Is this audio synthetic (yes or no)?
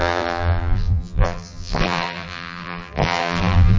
yes